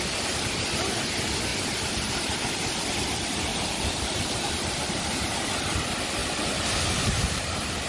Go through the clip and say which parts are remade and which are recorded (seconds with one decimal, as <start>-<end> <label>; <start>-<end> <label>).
0.0-3.5 recorded; 3.5-4.5 remade; 4.5-6.2 recorded; 6.2-7.9 remade